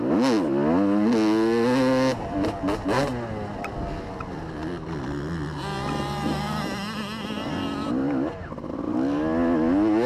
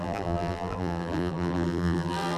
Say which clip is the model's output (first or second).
second